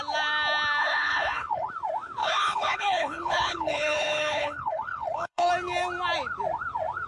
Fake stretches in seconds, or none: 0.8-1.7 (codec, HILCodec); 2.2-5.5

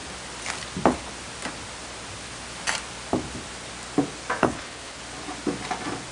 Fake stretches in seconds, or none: 4.4-5.0 (codec, HILCodec)